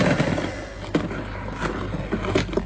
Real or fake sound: real